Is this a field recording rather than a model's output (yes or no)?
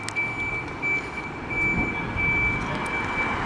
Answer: yes